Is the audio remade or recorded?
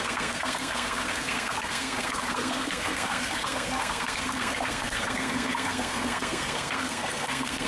remade